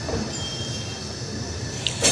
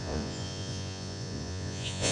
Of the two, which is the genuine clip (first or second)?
first